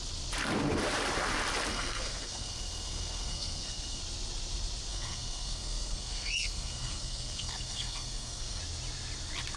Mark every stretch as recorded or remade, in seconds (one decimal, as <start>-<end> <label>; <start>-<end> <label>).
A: 0.0-1.7 recorded; 1.7-4.0 remade; 4.0-4.9 recorded; 4.9-8.6 remade; 8.6-9.6 recorded